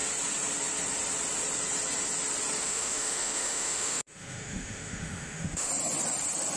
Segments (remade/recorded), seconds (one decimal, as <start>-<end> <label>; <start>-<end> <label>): 0.0-2.6 recorded; 2.6-5.7 remade; 5.7-6.6 recorded